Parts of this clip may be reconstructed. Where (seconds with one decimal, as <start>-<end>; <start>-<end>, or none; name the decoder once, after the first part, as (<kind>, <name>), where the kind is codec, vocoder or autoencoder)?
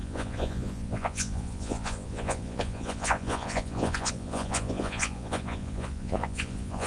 0.0-6.9 (vocoder, Vocos)